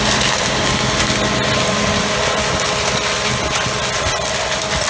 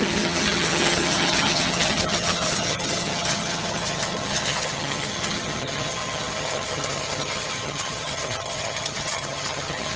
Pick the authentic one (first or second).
first